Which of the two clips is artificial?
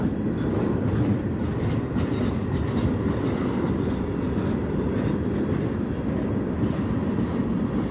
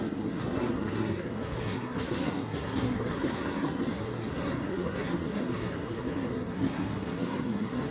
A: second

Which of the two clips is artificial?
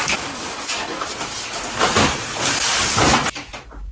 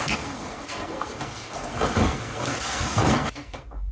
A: second